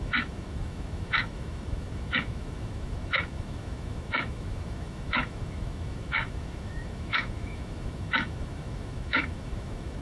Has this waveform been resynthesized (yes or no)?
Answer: yes